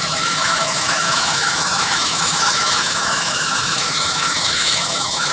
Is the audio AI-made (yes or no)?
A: yes